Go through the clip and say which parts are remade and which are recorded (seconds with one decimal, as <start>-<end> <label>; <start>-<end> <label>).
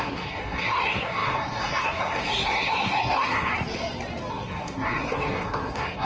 0.0-3.5 remade; 3.5-4.3 recorded; 4.3-6.0 remade